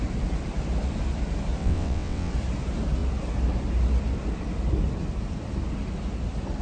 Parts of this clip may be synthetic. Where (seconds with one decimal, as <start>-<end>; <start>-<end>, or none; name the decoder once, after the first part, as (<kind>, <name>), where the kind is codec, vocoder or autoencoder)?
1.6-2.3 (vocoder, WaveNeXt)